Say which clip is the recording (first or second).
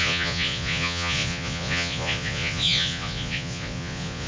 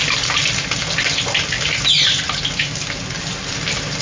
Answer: second